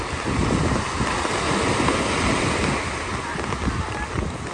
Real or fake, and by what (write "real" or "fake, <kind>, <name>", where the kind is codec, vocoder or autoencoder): real